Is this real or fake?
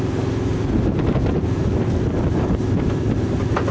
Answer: real